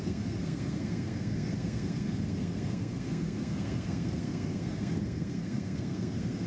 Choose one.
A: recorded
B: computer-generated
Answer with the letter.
B